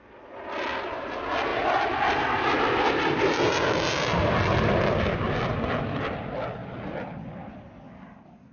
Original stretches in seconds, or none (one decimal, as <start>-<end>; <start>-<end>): 0.0-8.5